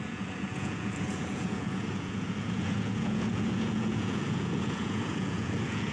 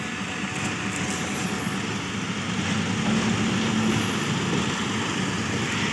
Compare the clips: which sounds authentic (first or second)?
second